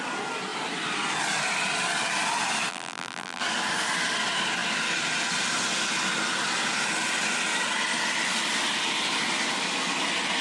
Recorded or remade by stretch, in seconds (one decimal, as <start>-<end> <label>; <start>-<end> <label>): 0.0-2.7 recorded; 2.7-3.4 remade; 3.4-10.4 recorded